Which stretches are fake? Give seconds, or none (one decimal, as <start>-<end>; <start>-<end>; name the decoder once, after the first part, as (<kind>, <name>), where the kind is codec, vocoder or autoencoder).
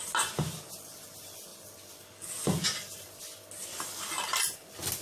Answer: none